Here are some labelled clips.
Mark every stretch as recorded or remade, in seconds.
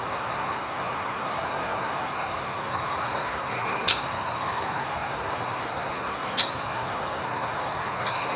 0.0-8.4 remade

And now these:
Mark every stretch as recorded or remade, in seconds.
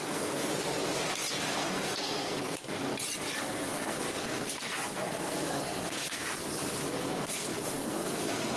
0.0-0.5 remade; 0.5-1.3 recorded; 1.3-2.9 remade; 2.9-3.4 recorded; 3.4-6.4 remade; 6.4-6.9 recorded; 6.9-8.6 remade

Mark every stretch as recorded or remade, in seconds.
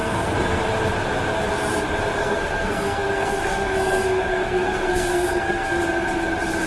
0.0-0.6 remade; 0.6-2.2 recorded; 2.2-5.8 remade; 5.8-6.7 recorded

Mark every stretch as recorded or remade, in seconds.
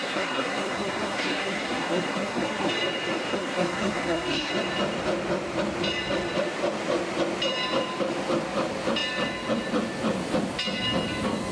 0.0-2.7 remade; 2.7-3.3 recorded; 3.3-4.5 remade; 4.5-11.5 recorded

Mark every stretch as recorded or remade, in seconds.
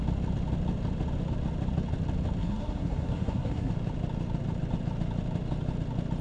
0.0-2.4 recorded; 2.4-3.7 remade; 3.7-6.2 recorded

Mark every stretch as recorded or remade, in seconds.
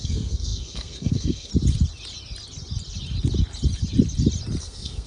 0.0-1.5 remade; 1.5-4.6 recorded; 4.6-5.1 remade